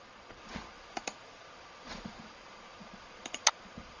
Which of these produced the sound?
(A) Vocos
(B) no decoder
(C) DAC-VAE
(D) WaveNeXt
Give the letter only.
A